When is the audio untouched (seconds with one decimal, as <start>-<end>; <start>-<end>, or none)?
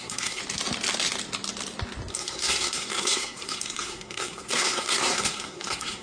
0.4-2.1